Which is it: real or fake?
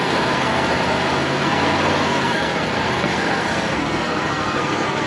fake